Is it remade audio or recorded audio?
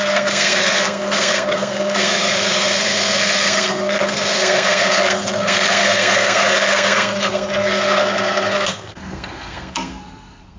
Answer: remade